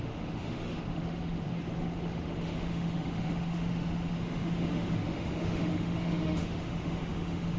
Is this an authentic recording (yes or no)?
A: no